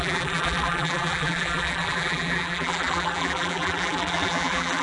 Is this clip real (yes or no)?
no